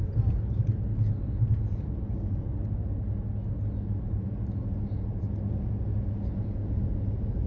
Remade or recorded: recorded